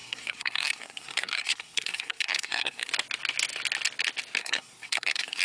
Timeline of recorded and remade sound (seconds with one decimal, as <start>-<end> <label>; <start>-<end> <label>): 0.0-2.9 remade; 2.9-4.4 recorded; 4.4-5.4 remade